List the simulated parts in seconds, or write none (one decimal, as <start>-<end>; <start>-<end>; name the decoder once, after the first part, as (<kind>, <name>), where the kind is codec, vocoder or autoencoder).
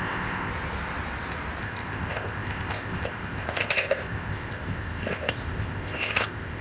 0.0-0.5 (codec, ZipCodec); 1.6-6.6